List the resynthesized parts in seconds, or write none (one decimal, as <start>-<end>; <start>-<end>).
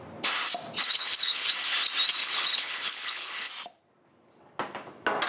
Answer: 0.9-1.5; 2.2-3.5